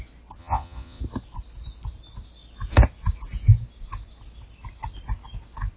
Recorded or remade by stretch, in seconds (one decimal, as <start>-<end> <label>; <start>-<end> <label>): 0.0-0.4 recorded; 0.4-1.0 remade; 1.0-5.8 recorded

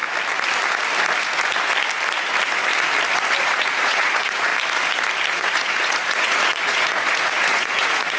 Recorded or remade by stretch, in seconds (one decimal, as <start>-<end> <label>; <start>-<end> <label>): 0.0-3.4 recorded; 3.4-4.5 remade; 4.5-5.3 recorded; 5.3-8.2 remade

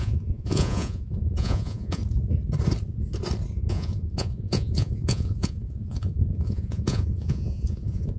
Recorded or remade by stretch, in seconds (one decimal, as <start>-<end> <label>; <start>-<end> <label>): 0.0-2.0 remade; 2.0-3.7 recorded; 3.7-8.2 remade

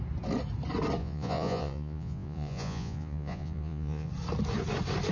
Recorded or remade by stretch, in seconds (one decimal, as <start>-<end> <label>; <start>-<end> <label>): 0.0-1.0 recorded; 1.0-4.1 remade; 4.1-5.1 recorded